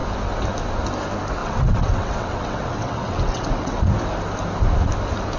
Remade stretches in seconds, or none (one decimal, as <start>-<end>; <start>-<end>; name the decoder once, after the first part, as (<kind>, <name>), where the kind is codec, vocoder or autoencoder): 1.4-3.9 (vocoder, WaveNeXt)